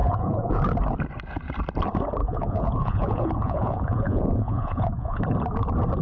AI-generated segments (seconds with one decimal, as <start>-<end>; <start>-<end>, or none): 0.0-0.6; 2.2-5.2